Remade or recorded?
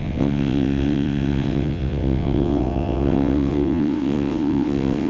remade